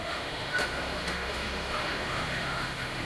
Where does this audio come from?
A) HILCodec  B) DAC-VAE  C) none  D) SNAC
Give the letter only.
B